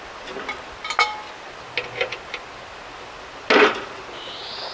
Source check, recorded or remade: recorded